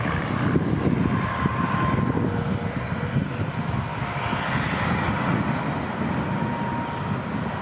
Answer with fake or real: real